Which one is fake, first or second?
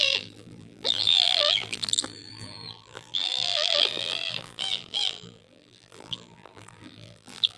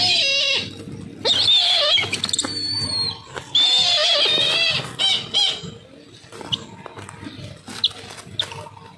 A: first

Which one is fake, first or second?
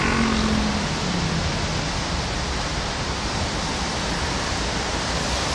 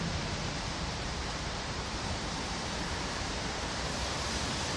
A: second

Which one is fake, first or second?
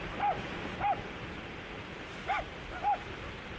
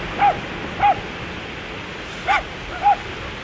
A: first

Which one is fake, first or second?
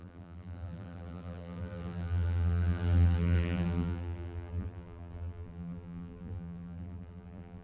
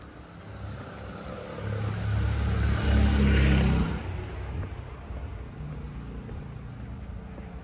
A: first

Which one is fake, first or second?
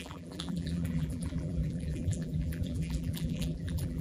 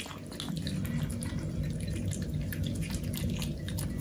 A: first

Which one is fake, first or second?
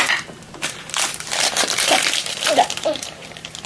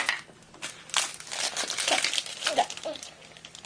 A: first